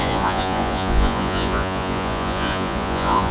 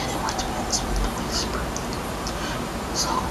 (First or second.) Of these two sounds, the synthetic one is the first